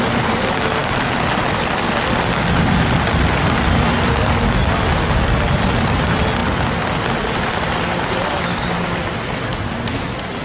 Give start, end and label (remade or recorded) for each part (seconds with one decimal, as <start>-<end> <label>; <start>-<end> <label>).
0.0-10.4 recorded